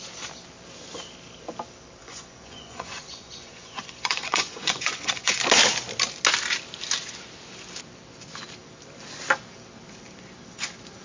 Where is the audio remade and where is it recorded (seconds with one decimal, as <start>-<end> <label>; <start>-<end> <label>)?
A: 0.0-2.0 recorded; 2.0-5.4 remade; 5.4-11.0 recorded